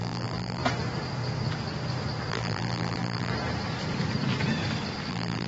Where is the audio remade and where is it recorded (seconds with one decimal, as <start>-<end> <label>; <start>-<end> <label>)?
0.0-0.6 remade; 0.6-2.3 recorded; 2.3-3.3 remade; 3.3-5.1 recorded; 5.1-5.5 remade